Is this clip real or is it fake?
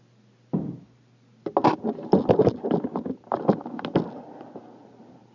real